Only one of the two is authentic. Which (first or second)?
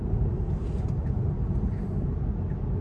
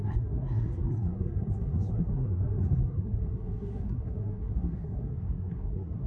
first